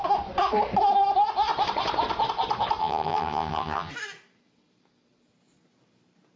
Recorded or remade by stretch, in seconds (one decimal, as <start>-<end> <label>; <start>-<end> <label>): 0.0-2.8 recorded; 2.8-3.9 remade; 3.9-6.4 recorded